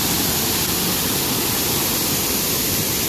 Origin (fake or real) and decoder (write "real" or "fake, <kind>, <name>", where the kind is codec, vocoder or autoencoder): real